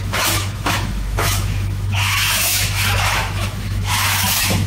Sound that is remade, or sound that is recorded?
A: remade